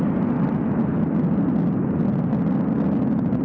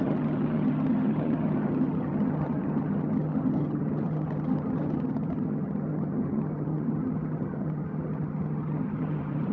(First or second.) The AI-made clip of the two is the second